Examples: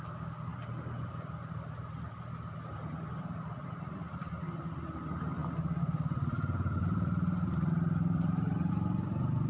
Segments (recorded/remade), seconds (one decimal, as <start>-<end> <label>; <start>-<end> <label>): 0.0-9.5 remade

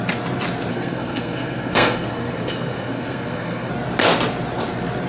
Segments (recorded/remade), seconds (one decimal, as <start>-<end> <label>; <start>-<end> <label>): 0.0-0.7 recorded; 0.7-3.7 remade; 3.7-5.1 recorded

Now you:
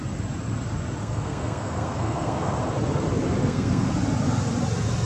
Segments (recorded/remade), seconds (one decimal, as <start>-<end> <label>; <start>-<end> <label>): 0.0-1.0 recorded; 1.0-2.6 remade; 2.6-3.4 recorded; 3.4-3.9 remade; 3.9-5.1 recorded

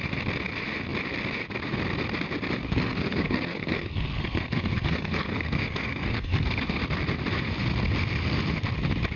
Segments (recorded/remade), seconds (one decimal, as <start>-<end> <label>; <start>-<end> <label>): 0.0-2.6 recorded; 2.6-6.8 remade; 6.8-9.2 recorded

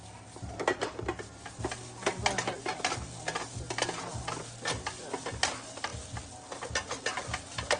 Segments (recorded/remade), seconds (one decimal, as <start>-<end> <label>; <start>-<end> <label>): 0.0-7.8 recorded

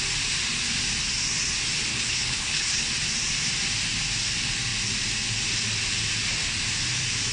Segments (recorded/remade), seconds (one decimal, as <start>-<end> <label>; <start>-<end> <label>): 0.0-1.9 recorded; 1.9-2.8 remade; 2.8-7.3 recorded